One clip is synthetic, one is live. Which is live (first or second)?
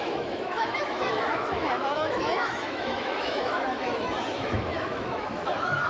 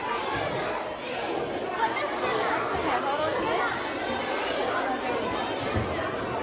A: second